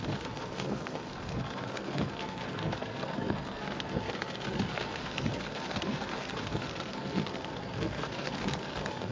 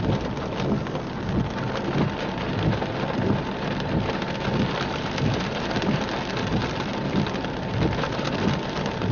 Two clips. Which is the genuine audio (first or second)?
second